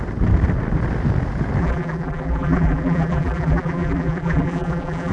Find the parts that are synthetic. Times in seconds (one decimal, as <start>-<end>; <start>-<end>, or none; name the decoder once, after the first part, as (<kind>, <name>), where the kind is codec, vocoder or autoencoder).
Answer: 1.6-5.1 (vocoder, BigVGAN v2)